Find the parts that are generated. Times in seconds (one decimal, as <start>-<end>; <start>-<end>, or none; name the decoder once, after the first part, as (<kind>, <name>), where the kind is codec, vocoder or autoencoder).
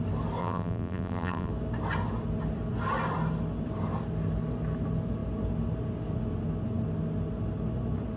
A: 0.4-1.5 (vocoder, BigVGAN v2)